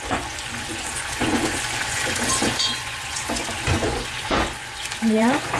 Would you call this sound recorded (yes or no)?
no